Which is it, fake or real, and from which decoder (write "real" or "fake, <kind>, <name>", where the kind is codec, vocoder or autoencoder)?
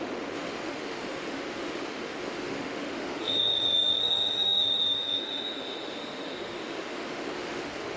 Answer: fake, autoencoder, DAC-VAE